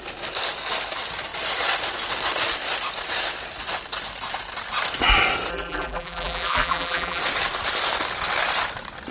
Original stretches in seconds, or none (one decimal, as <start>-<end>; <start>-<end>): 0.0-5.5; 7.2-9.1